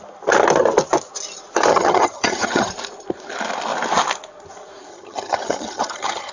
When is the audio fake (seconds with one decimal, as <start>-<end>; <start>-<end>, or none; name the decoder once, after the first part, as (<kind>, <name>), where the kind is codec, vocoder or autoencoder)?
1.7-2.7 (vocoder, HiFi-GAN); 4.9-6.3